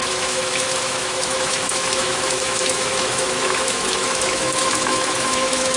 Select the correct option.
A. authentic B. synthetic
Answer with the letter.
B